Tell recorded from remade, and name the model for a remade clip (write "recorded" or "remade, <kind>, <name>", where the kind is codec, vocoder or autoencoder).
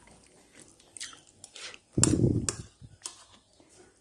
recorded